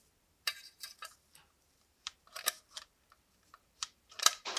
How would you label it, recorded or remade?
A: remade